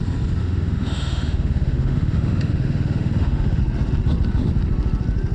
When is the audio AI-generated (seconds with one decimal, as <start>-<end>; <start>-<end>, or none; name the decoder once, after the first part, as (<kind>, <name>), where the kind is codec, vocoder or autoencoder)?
0.4-3.6 (autoencoder, DAC-VAE)